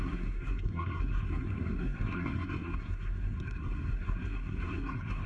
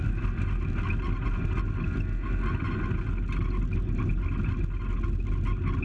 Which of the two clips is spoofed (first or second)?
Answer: first